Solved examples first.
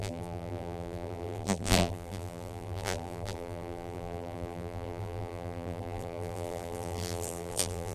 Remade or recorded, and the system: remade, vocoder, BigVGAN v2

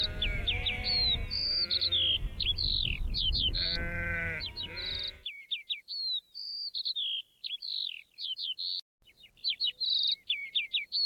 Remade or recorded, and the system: recorded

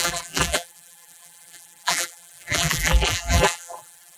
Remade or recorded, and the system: remade, vocoder, BigVGAN v2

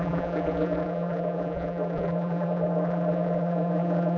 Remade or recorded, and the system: remade, vocoder, BigVGAN v2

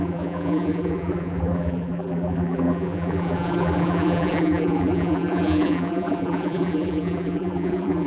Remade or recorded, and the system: remade, vocoder, BigVGAN v2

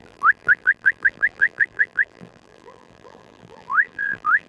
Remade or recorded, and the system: remade, vocoder, BigVGAN v2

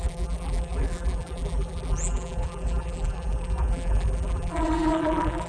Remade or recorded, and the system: remade, vocoder, BigVGAN v2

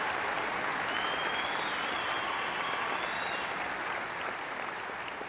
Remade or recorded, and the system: recorded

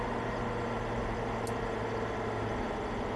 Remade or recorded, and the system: recorded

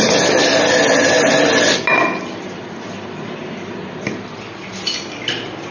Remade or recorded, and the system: recorded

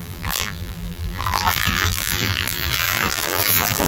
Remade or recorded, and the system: remade, vocoder, BigVGAN v2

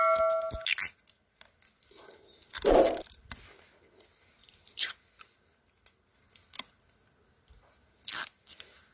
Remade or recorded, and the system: recorded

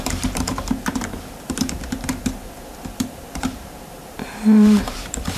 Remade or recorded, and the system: remade, vocoder, BigVGAN v2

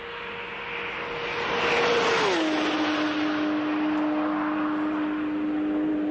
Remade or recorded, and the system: recorded